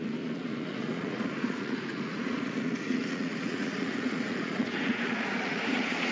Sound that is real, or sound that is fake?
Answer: fake